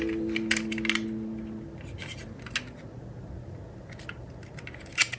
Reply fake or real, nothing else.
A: real